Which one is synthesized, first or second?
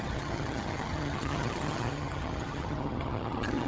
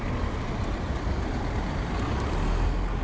first